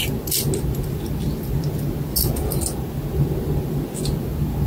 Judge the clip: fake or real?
real